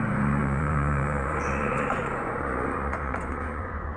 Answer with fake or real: fake